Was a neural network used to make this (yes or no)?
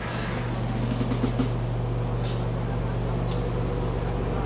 no